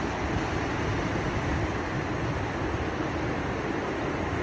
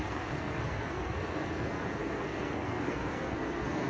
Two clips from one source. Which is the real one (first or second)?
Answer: first